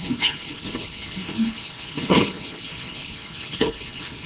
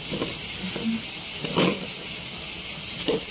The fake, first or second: first